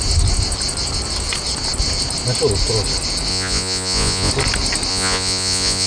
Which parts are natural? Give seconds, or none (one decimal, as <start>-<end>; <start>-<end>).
0.0-3.3; 4.3-4.9